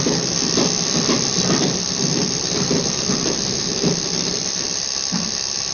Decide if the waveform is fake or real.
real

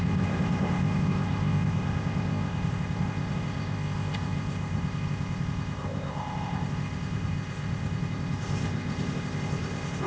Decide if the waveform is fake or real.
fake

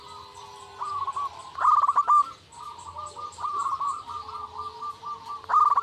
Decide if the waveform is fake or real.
real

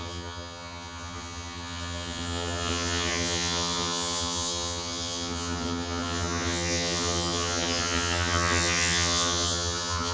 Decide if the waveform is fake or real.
fake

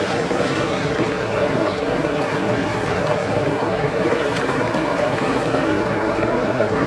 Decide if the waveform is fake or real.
fake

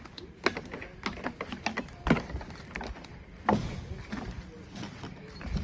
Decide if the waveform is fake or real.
real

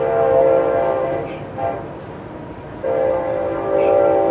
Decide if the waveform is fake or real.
real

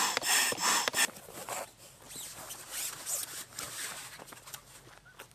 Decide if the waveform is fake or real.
real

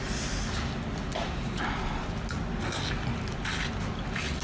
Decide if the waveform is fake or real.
real